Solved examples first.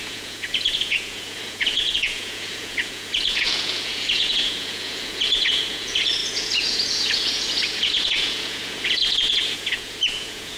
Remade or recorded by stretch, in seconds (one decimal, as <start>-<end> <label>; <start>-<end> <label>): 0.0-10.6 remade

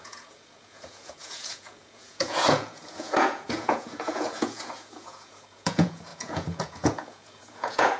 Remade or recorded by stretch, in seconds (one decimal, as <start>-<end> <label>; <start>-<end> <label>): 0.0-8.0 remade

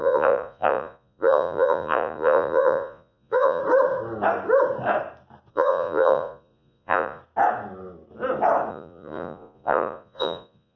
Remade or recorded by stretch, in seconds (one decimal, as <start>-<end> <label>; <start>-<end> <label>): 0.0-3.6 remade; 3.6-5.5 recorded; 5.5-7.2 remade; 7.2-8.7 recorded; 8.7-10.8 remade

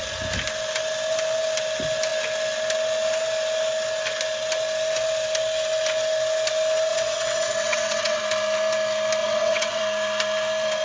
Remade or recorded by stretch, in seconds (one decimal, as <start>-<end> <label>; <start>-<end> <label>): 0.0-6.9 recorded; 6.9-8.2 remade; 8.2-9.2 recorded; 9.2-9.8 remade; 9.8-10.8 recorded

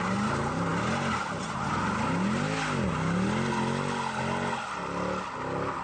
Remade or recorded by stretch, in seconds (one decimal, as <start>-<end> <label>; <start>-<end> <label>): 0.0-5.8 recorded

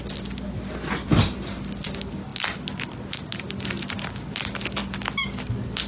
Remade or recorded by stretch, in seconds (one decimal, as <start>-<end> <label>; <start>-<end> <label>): 0.0-5.9 recorded

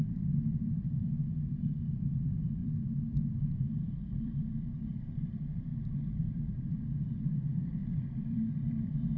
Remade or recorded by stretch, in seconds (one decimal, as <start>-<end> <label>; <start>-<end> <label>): 0.0-9.2 remade